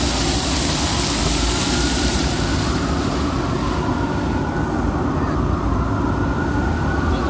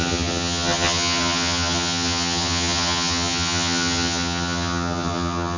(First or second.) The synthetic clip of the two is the second